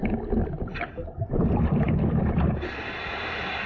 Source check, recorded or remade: recorded